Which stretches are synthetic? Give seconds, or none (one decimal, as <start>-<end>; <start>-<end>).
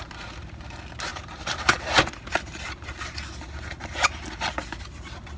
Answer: 1.1-2.1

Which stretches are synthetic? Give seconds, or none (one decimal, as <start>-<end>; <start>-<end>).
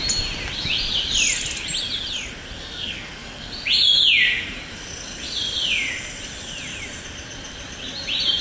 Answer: 2.6-3.5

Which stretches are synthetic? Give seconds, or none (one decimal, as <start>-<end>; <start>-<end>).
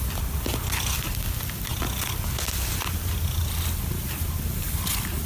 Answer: none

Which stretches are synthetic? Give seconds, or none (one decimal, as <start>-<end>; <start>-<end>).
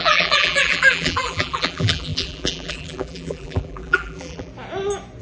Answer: 0.0-4.5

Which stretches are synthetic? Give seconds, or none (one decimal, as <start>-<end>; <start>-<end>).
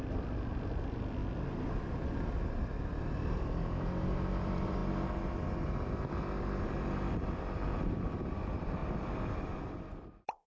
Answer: 0.0-1.2; 2.7-4.8; 6.7-8.8; 10.1-10.5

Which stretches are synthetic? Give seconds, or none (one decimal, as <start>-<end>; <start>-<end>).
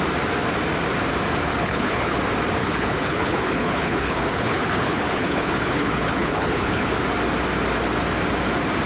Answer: 1.5-2.2; 2.6-6.9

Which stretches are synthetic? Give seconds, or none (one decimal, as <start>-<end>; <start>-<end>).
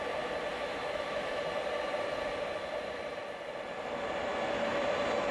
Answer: 0.5-1.4